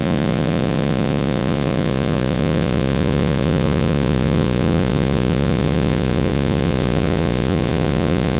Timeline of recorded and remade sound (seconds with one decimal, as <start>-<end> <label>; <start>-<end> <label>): 0.0-8.4 remade